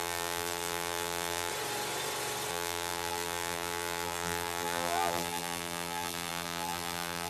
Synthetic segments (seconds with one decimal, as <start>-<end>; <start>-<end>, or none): 0.0-1.5; 2.5-7.3